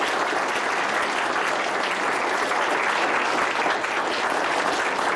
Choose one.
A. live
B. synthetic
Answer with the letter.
A